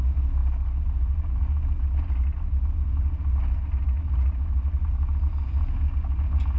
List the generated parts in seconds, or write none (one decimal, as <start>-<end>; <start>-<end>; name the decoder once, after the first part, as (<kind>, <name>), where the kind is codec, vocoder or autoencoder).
none